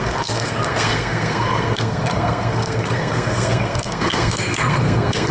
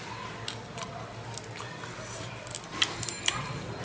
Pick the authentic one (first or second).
second